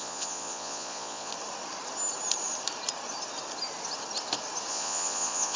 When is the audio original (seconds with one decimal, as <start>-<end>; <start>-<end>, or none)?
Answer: 1.3-4.7